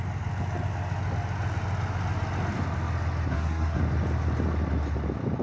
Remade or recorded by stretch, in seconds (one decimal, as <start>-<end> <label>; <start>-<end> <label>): 0.0-3.3 recorded; 3.3-3.8 remade; 3.8-5.4 recorded